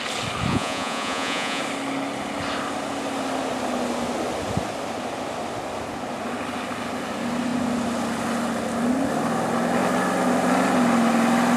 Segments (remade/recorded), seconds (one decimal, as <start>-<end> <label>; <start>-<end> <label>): 0.0-0.5 recorded; 0.5-1.6 remade; 1.6-11.6 recorded